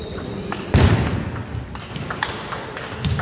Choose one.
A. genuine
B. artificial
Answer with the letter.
A